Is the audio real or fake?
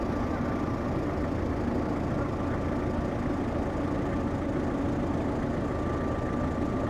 real